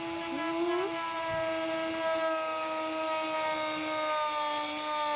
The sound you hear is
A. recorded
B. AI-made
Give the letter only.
A